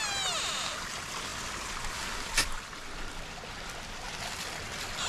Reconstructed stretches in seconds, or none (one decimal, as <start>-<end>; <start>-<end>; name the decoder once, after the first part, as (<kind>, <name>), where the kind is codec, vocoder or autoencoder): none